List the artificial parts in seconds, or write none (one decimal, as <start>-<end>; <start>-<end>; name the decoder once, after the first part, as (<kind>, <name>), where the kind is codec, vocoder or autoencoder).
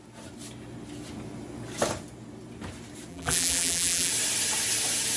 3.1-4.1 (vocoder, BigVGAN v2)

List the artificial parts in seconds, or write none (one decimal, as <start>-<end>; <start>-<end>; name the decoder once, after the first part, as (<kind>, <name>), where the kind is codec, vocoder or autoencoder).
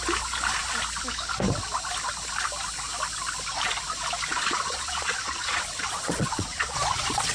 4.3-7.3 (vocoder, Vocos)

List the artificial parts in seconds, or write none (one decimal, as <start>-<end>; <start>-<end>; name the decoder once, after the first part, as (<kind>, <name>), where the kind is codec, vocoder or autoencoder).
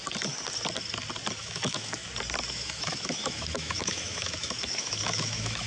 1.4-2.0 (autoencoder, DAC-VAE); 2.5-5.7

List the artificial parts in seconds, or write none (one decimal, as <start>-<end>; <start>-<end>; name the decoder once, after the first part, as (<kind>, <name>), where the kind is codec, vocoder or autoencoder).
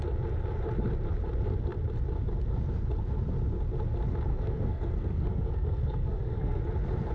4.3-6.6 (codec, SNAC)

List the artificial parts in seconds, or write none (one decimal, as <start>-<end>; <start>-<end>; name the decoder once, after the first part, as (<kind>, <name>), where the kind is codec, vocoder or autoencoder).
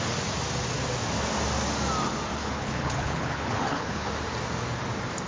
2.4-4.1 (codec, HILCodec)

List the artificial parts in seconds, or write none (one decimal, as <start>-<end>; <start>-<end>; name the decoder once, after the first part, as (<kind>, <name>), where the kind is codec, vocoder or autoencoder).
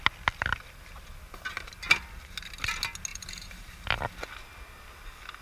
3.1-4.1 (vocoder, BigVGAN v2)